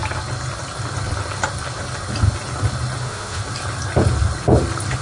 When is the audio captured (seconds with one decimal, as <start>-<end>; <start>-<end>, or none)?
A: 0.0-3.0; 3.4-5.0